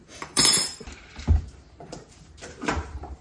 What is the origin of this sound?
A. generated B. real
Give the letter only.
A